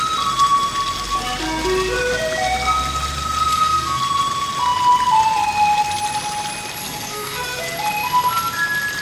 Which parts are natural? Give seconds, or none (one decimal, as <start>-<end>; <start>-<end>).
0.0-3.5; 4.0-6.8; 7.6-9.0